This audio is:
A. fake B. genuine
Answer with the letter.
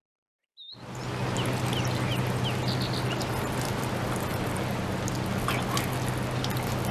B